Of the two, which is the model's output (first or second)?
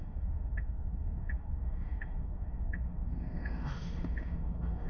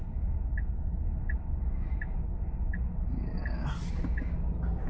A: first